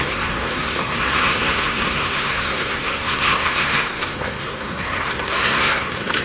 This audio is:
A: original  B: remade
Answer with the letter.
B